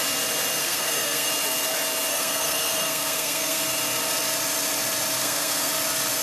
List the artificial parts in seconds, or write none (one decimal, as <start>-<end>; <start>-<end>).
0.6-1.3; 2.1-3.6; 5.2-5.7